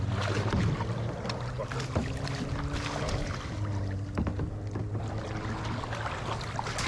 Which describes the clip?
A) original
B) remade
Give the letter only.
A